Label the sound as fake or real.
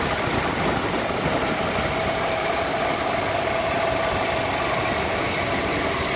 real